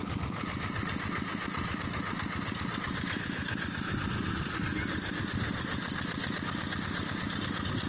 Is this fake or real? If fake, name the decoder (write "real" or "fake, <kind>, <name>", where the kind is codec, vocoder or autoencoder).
real